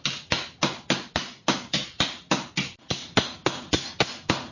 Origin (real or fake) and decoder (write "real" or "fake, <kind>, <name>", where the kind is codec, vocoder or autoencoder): real